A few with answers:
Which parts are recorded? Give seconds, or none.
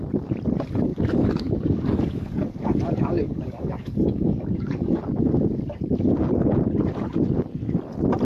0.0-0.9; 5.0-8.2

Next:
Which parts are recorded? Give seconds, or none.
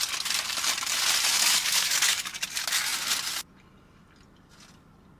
0.0-1.3; 2.4-5.2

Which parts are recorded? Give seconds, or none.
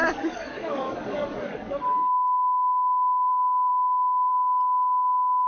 3.3-3.7; 4.3-5.5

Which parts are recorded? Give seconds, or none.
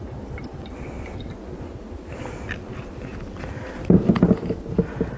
0.0-5.2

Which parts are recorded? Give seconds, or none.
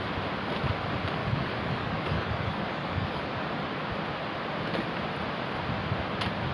0.0-1.2; 3.2-6.5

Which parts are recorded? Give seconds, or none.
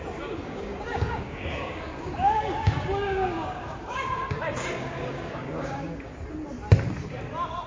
6.1-7.7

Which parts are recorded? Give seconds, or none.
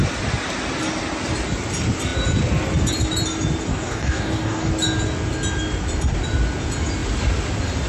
0.0-3.7; 4.7-7.9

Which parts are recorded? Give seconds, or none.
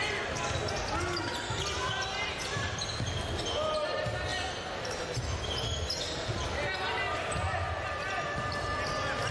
0.0-9.3